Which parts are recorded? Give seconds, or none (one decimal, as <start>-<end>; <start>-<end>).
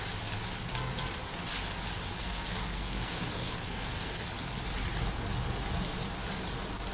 0.0-2.2; 4.2-6.9